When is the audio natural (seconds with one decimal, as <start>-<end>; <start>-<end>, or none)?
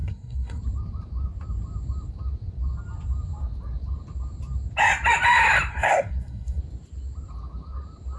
0.6-5.7; 6.6-8.2